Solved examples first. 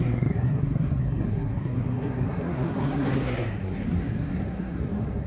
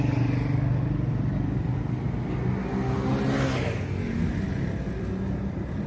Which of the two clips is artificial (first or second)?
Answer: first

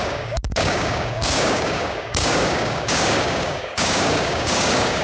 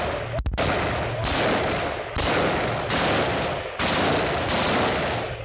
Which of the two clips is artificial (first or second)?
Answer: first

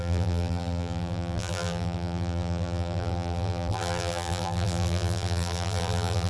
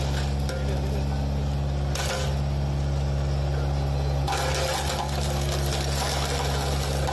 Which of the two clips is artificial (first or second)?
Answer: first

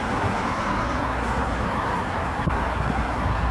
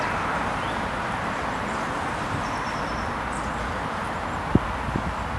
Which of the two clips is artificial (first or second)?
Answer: first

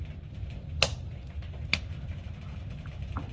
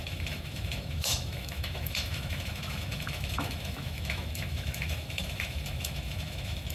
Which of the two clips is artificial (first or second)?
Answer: second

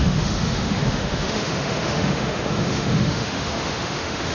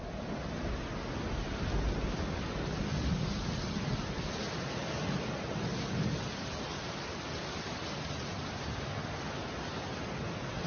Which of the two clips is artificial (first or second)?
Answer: first